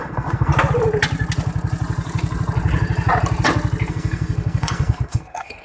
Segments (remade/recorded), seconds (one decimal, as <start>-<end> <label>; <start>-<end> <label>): 0.0-0.5 remade; 0.5-3.9 recorded; 3.9-5.6 remade